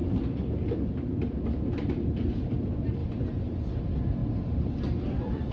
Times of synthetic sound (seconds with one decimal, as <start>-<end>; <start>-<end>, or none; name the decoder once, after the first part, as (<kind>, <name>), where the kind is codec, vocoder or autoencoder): 0.9-3.0 (vocoder, BigVGAN v2); 3.8-4.2; 5.1-5.5